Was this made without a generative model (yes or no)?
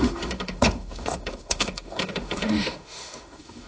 no